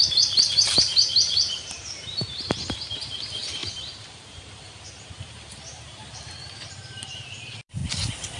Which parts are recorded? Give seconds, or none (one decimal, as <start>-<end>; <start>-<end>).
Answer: 7.8-8.4